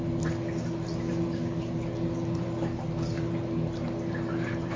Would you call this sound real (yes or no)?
yes